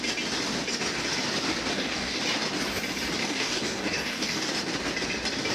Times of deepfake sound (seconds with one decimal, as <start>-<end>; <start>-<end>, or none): 1.7-2.2; 3.2-4.5